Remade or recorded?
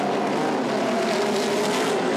recorded